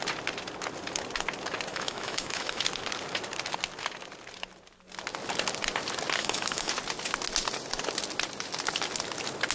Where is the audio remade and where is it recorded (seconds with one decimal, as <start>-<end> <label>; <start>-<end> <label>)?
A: 0.0-1.7 recorded; 1.7-2.6 remade; 2.6-6.2 recorded; 6.2-6.7 remade; 6.7-9.5 recorded